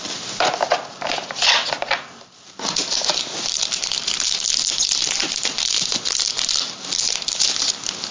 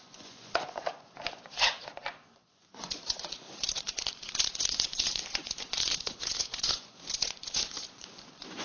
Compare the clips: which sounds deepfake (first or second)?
second